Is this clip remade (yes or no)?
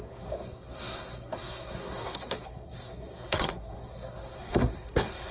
yes